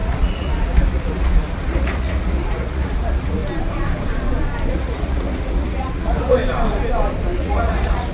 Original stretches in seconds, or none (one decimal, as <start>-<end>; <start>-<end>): 3.4-4.7; 6.4-7.4